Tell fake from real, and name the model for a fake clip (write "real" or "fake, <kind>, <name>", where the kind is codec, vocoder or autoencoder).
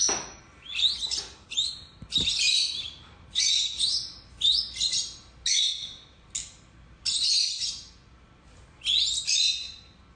real